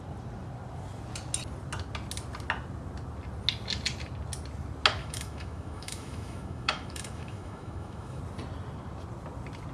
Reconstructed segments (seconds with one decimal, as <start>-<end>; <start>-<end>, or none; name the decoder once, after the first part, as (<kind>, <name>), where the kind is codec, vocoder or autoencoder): 5.0-8.2 (autoencoder, DAC-VAE)

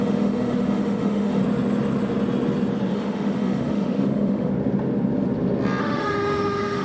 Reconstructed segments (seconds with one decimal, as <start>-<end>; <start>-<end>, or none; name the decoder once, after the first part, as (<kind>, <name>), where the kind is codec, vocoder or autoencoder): 0.0-1.4 (autoencoder, DAC-VAE); 2.9-4.5; 5.8-6.8

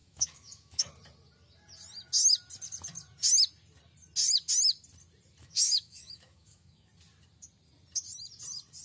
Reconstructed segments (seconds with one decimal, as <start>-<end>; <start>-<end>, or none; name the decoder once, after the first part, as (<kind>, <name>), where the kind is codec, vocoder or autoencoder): 0.0-0.9 (autoencoder, DAC-VAE); 5.4-6.9

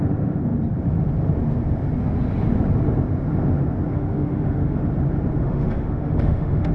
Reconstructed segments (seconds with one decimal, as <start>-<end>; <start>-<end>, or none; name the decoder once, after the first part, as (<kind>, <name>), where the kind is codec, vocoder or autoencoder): 3.9-4.8 (autoencoder, DAC-VAE); 5.4-6.7

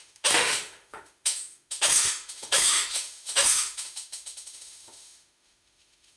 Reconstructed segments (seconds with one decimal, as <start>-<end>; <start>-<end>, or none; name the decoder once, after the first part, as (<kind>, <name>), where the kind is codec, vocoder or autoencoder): 0.0-6.2 (autoencoder, DAC-VAE)

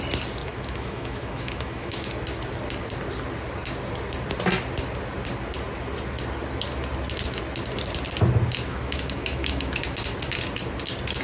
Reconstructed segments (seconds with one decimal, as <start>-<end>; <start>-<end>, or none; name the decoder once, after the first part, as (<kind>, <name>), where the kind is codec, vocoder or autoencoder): 0.4-2.1 (autoencoder, DAC-VAE); 8.7-9.7